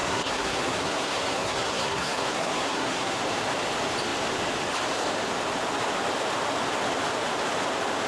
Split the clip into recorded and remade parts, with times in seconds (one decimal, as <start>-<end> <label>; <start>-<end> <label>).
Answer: 0.0-3.2 remade; 3.2-8.1 recorded

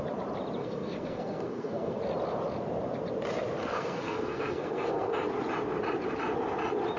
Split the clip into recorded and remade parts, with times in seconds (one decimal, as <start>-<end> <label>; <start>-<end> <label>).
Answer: 0.0-0.6 recorded; 0.6-2.0 remade; 2.0-3.6 recorded; 3.6-5.1 remade; 5.1-7.0 recorded

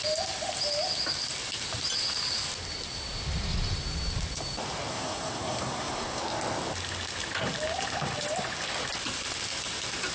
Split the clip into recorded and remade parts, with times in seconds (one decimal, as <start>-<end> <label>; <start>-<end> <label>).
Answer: 0.0-4.9 recorded; 4.9-6.2 remade; 6.2-10.1 recorded

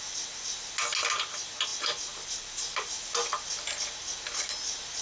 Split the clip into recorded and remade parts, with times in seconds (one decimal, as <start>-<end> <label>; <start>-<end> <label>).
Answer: 0.0-5.0 recorded

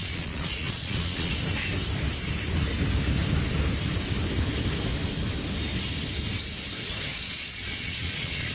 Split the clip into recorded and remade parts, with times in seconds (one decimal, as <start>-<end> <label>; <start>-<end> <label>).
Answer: 0.0-1.3 remade; 1.3-7.1 recorded; 7.1-8.5 remade